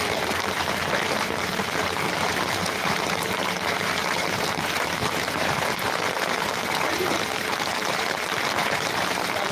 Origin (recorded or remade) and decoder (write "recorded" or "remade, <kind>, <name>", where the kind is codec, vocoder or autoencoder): remade, vocoder, BigVGAN v2